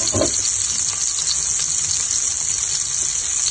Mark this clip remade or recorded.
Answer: recorded